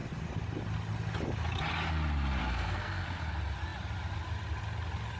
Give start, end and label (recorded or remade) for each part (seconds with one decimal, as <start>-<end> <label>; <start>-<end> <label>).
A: 0.0-2.4 recorded; 2.4-3.3 remade; 3.3-5.2 recorded